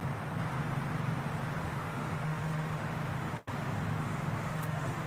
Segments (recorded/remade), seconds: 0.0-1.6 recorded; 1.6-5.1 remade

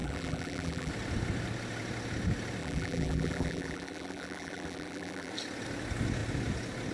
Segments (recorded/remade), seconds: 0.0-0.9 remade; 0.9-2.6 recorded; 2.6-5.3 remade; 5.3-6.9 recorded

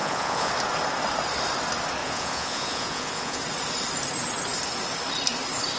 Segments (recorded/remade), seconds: 0.0-0.5 remade; 0.5-2.0 recorded; 2.0-3.4 remade; 3.4-5.8 recorded

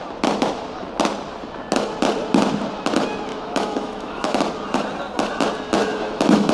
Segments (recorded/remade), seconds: 0.0-3.3 recorded; 3.3-4.4 remade; 4.4-5.8 recorded; 5.8-6.5 remade